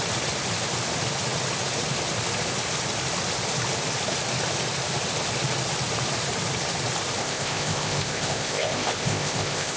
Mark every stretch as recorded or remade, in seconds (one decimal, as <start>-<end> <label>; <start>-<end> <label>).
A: 0.0-7.2 recorded; 7.2-9.8 remade